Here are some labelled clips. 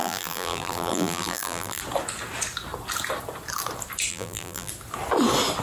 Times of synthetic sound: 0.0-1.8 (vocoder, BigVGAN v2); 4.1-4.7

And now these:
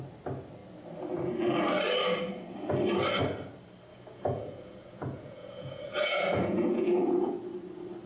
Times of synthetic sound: 3.9-7.3 (vocoder, Vocos)

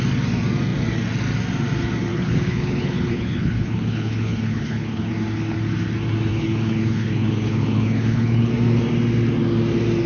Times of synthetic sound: 2.1-5.1 (codec, HILCodec); 6.3-8.5

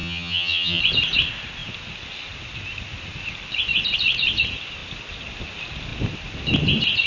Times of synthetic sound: 0.0-0.8 (vocoder, HiFi-GAN)

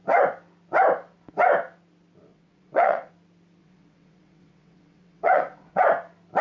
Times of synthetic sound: 2.3-3.1 (vocoder, WaveNeXt); 3.6-5.8